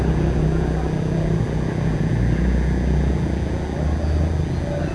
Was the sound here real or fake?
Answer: real